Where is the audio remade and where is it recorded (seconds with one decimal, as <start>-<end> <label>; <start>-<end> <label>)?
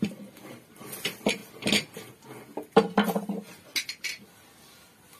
0.0-5.2 recorded